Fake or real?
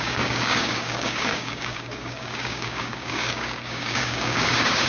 fake